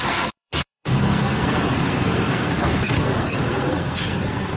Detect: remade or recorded remade